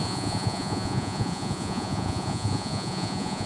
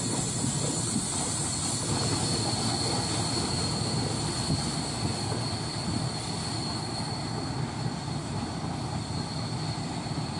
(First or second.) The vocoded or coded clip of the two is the first